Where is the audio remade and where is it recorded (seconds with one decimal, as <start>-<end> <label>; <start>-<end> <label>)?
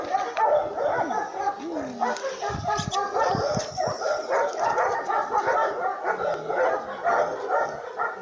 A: 0.0-8.2 recorded